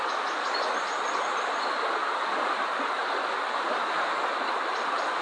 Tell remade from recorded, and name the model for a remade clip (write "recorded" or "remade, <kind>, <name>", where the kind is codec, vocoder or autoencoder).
recorded